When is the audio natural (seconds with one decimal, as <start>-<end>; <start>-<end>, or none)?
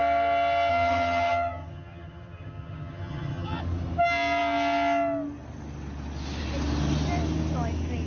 0.0-0.7; 3.6-8.1